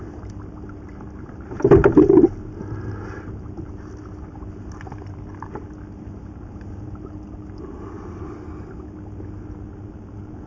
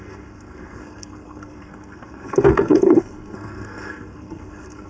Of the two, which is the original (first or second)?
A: first